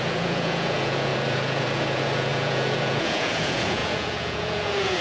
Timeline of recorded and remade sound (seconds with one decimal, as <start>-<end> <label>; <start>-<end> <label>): 0.0-5.0 remade

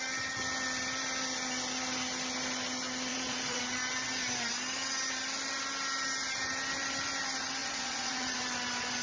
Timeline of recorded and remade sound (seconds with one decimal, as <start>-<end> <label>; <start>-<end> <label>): 0.0-3.1 recorded; 3.1-3.6 remade; 3.6-7.6 recorded; 7.6-8.4 remade; 8.4-9.0 recorded

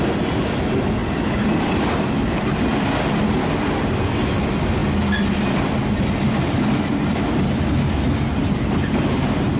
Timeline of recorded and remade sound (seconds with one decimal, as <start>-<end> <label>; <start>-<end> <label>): 0.0-9.6 recorded

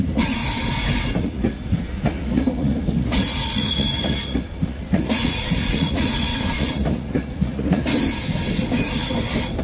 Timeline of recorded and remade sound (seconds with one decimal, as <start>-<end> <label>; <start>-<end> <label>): 0.0-0.4 remade; 0.4-1.2 recorded; 1.2-7.9 remade; 7.9-9.6 recorded